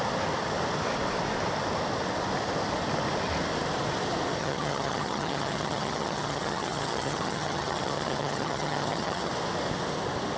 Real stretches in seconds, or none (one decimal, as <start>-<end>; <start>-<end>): 0.0-4.4; 9.3-10.4